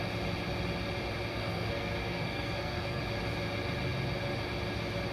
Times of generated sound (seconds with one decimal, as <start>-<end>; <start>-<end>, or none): 1.3-3.0